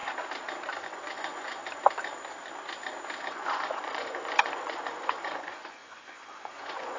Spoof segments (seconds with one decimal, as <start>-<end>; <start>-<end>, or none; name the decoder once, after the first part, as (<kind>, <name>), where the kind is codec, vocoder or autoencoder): 0.8-1.6 (vocoder, Vocos); 3.3-7.0